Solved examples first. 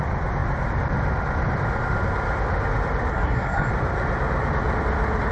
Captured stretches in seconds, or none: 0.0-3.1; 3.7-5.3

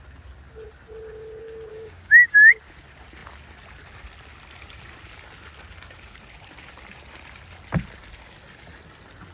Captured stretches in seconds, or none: 0.0-1.7; 2.5-9.3

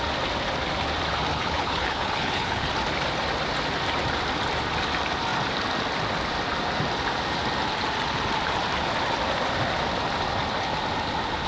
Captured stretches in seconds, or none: 0.0-1.3; 2.7-11.5

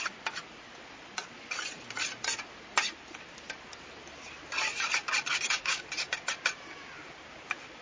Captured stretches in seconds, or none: 0.0-5.3; 5.8-7.8

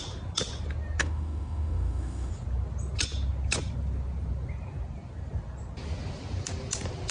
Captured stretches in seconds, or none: 0.0-1.0; 2.3-7.1

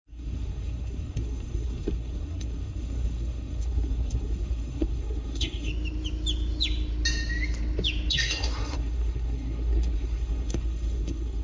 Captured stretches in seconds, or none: 5.7-8.1